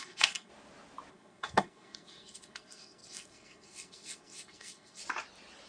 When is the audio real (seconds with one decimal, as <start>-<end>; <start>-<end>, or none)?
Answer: 0.5-1.1; 5.0-5.7